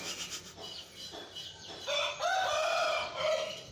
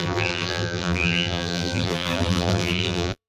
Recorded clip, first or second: first